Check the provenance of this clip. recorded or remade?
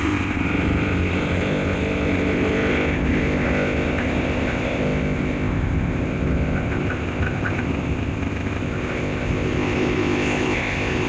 remade